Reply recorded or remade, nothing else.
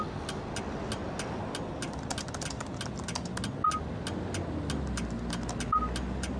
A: recorded